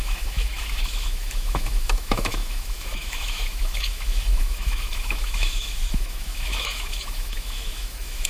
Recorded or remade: remade